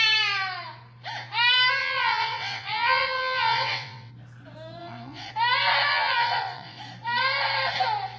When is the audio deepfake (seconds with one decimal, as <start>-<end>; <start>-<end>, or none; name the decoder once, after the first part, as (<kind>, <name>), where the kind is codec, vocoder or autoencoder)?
1.8-4.1 (vocoder, WaveNeXt); 4.8-5.3; 5.9-6.8